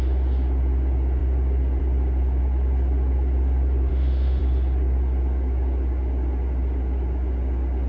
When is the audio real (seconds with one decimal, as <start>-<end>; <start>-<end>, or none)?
0.0-3.9; 4.4-7.9